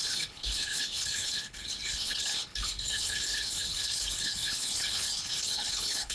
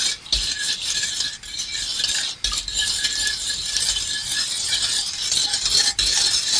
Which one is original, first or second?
second